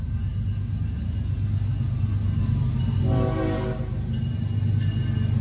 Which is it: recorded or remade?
recorded